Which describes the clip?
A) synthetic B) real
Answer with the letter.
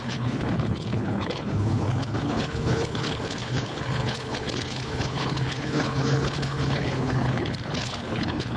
A